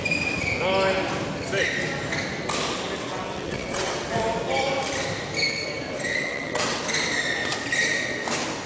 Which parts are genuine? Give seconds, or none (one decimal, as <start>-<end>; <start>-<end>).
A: 0.0-3.1; 4.1-6.1; 6.8-8.7